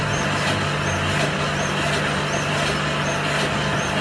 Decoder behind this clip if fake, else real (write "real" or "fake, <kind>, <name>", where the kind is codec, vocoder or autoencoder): real